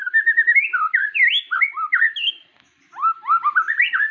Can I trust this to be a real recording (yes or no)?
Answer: yes